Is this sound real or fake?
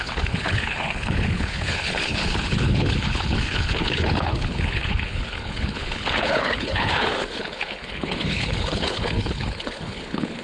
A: fake